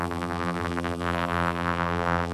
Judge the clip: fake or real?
fake